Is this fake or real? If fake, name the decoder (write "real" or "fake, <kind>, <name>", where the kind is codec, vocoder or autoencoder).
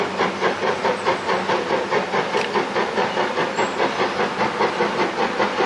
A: real